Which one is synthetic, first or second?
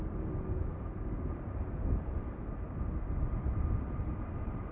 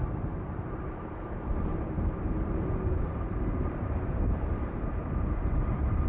second